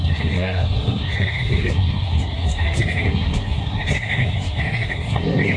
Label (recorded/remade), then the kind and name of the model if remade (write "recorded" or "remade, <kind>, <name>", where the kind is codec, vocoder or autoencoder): remade, codec, SNAC